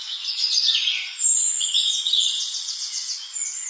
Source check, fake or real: fake